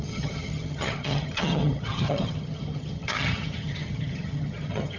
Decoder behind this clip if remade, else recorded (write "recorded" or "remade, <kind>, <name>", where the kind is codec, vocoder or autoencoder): remade, vocoder, HiFi-GAN